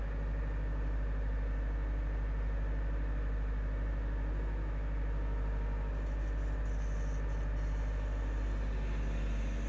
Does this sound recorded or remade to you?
recorded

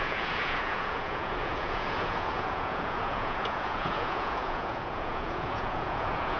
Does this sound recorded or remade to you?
remade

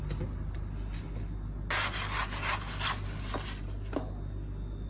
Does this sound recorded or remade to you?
recorded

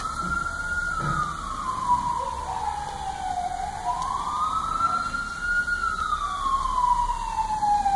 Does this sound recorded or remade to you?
recorded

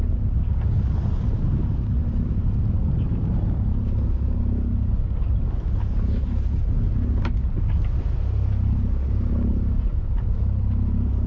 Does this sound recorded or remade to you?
recorded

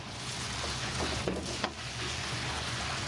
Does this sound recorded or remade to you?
remade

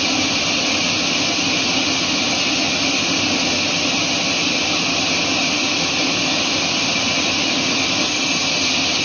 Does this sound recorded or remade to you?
recorded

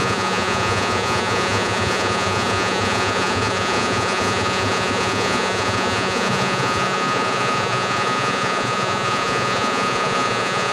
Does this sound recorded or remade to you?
remade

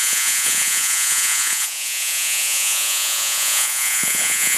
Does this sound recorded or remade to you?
remade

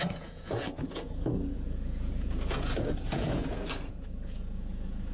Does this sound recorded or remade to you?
remade